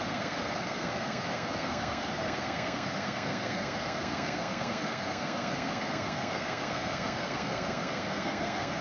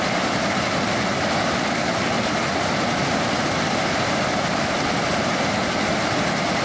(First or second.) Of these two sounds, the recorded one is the second